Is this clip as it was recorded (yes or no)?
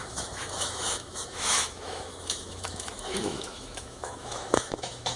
no